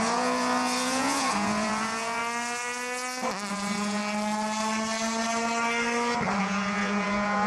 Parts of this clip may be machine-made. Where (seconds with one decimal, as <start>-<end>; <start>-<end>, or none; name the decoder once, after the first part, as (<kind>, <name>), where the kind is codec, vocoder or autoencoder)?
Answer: 0.0-2.2 (vocoder, Vocos); 3.5-4.0; 6.4-7.5